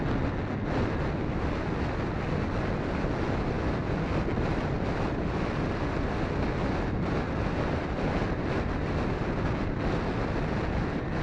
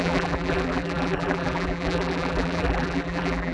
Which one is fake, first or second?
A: second